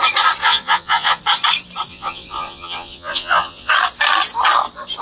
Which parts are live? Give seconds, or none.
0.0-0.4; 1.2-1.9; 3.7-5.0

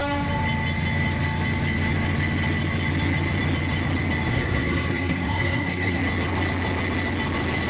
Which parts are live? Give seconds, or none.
0.0-4.3; 6.0-7.7

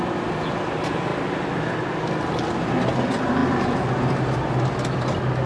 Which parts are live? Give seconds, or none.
0.0-5.5

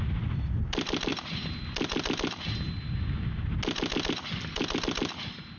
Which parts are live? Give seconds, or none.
0.0-5.6

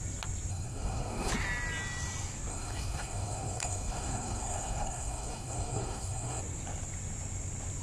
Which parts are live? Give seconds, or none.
0.0-0.5; 1.3-2.5; 6.4-7.8